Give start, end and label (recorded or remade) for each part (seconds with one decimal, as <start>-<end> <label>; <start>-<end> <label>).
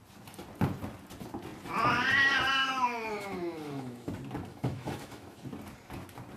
0.0-2.6 recorded; 2.6-4.1 remade; 4.1-4.5 recorded; 4.5-5.4 remade; 5.4-6.4 recorded